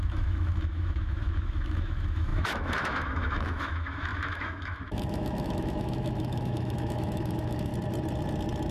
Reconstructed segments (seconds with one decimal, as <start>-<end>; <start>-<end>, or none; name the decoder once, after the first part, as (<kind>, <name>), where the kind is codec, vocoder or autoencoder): 0.0-7.7 (autoencoder, DAC-VAE)

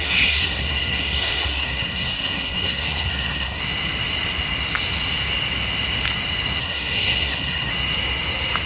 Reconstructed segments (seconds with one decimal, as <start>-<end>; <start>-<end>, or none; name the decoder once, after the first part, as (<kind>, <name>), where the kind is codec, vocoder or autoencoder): 0.0-3.6 (codec, SNAC); 6.6-7.7

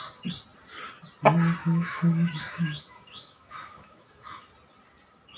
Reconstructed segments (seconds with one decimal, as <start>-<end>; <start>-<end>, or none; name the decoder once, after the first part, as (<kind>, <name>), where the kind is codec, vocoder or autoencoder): 1.6-4.5 (autoencoder, DAC-VAE)

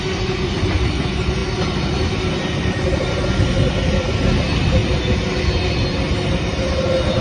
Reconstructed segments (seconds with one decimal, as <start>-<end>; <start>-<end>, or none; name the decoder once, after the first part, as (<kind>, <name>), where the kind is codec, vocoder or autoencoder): none

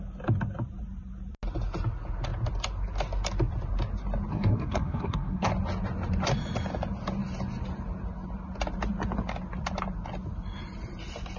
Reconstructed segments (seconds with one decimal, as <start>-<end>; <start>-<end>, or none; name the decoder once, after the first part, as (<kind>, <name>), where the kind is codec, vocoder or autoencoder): 4.3-5.5 (codec, SNAC)

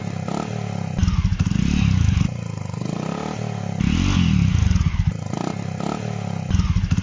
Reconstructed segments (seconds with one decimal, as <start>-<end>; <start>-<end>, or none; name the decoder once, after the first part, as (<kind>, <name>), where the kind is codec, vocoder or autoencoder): none